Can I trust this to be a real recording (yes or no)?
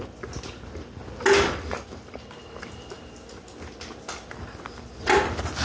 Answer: yes